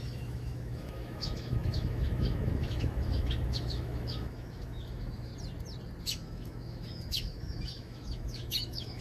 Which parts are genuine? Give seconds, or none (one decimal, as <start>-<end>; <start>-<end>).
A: 5.3-6.0